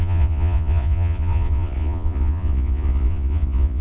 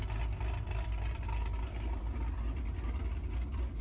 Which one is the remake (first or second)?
first